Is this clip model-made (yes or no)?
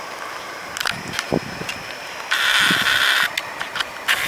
no